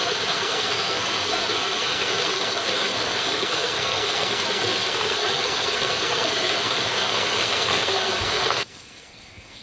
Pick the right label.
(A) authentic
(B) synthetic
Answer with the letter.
B